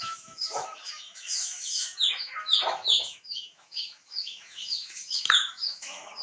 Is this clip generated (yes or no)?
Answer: yes